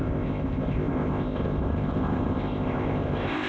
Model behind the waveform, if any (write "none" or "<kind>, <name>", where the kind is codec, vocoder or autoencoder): codec, ZipCodec